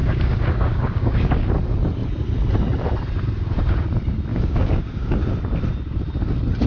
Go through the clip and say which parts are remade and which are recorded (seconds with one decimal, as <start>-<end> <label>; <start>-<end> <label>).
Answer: 0.0-1.5 remade; 1.5-4.3 recorded; 4.3-5.3 remade; 5.3-6.7 recorded